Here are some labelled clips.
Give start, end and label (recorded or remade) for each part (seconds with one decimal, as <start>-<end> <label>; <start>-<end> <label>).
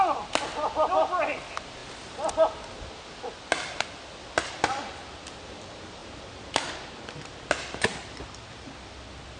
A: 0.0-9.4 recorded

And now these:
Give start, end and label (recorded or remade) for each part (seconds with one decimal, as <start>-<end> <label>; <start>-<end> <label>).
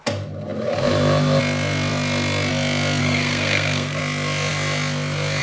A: 0.0-3.0 recorded; 3.0-4.0 remade; 4.0-5.4 recorded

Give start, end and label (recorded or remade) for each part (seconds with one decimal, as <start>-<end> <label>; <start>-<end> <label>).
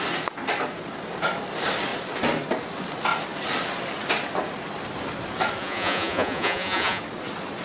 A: 0.0-5.6 recorded; 5.6-7.0 remade; 7.0-7.6 recorded